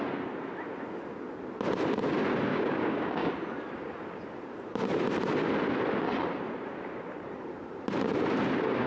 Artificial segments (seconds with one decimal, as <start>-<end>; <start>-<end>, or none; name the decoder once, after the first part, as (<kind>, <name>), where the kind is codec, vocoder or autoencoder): 2.5-3.3 (codec, DAC)